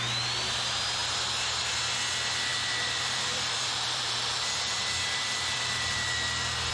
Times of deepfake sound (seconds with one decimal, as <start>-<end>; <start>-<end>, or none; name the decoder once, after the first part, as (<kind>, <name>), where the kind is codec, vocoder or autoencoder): 2.5-6.7 (vocoder, BigVGAN v2)

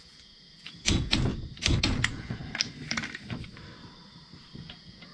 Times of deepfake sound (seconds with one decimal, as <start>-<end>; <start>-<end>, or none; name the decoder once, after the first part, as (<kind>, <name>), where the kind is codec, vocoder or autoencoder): 0.0-1.3 (vocoder, Vocos); 1.8-2.4; 4.6-5.1